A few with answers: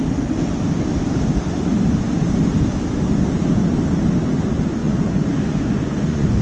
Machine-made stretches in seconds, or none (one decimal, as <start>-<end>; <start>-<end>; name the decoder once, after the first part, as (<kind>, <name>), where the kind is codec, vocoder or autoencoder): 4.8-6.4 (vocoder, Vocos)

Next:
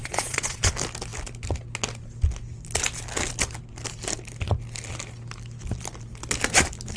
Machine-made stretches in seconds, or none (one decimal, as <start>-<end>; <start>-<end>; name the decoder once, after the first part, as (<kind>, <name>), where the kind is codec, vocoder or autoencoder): 0.0-0.7 (vocoder, Vocos)

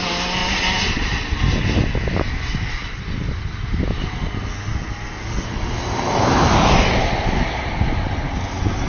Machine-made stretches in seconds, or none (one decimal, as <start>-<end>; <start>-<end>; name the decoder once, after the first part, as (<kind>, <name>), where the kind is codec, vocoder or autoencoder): none